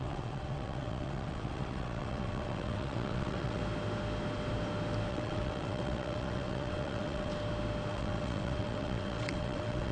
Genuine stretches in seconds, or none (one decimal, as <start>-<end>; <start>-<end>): 3.6-5.1; 7.3-7.9